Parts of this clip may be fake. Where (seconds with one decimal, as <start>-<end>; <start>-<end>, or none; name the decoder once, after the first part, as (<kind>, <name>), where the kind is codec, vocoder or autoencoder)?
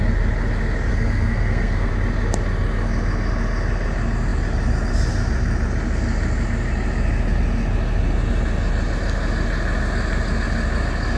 0.9-1.9 (codec, SNAC)